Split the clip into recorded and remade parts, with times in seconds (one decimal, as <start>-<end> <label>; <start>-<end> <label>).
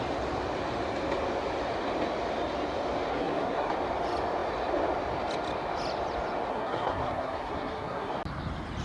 0.0-3.1 recorded; 3.1-3.7 remade; 3.7-6.5 recorded; 6.5-8.1 remade; 8.1-8.8 recorded